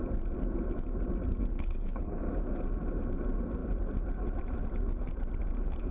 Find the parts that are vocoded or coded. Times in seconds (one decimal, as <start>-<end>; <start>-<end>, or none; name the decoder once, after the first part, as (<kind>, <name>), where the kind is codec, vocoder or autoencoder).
1.5-2.2 (codec, HILCodec)